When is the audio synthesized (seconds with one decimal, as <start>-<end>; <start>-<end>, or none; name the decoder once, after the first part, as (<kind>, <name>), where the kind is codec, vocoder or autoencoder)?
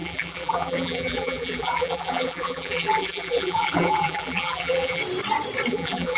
0.0-5.0 (vocoder, BigVGAN v2); 5.7-6.2